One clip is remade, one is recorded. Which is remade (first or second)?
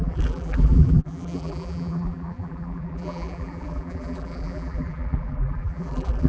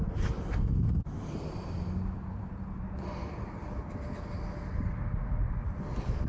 first